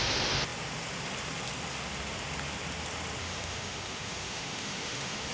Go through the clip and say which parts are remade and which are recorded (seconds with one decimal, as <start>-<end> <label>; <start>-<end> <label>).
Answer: 0.0-3.2 recorded; 3.2-5.3 remade